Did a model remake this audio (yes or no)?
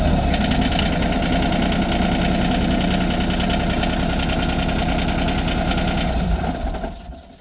no